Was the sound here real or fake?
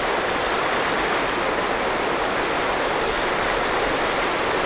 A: real